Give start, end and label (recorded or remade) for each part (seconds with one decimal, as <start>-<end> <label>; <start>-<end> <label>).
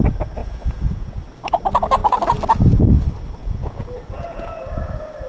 0.0-0.4 recorded; 0.4-1.2 remade; 1.2-3.4 recorded; 3.4-4.6 remade; 4.6-5.3 recorded